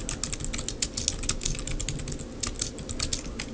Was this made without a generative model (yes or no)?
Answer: yes